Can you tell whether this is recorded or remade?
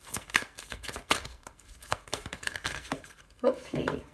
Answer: remade